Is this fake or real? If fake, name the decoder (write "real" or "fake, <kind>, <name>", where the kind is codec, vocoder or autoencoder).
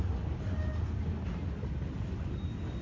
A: real